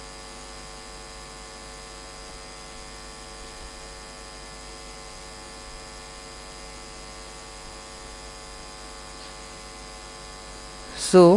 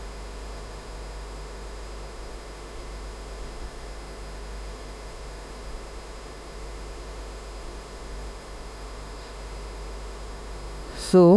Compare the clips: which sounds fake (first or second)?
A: second